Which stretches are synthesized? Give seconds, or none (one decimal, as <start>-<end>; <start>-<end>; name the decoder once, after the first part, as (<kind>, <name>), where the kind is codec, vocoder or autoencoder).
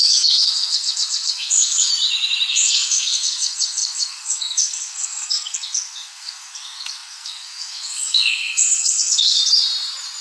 0.0-1.9 (codec, SNAC); 2.5-9.4